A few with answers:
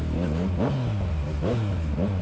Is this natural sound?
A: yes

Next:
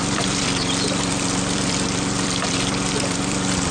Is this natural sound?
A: no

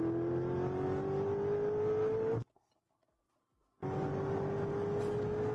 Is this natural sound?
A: yes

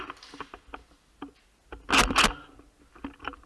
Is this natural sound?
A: yes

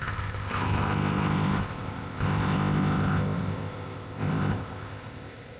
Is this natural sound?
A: no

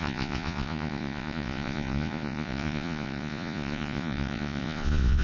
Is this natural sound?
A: no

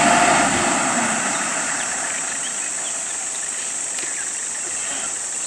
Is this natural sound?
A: yes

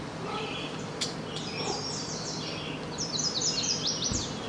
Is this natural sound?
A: no